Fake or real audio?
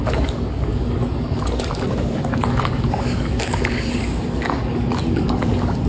fake